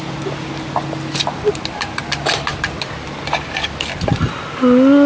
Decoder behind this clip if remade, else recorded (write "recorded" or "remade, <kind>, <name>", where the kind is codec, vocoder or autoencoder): recorded